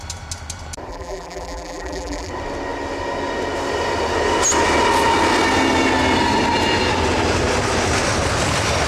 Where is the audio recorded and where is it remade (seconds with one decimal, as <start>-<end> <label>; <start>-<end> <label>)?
0.0-0.9 recorded; 0.9-2.3 remade; 2.3-8.9 recorded